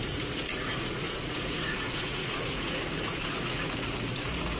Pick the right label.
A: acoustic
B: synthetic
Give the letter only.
B